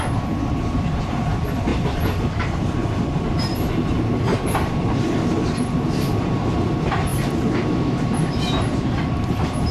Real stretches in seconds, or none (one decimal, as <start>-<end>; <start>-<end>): 7.1-8.2